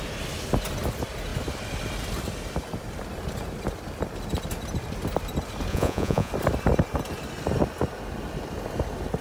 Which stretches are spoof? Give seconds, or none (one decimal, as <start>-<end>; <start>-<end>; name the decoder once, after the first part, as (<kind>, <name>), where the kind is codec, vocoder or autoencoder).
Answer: 5.7-6.3 (vocoder, Vocos)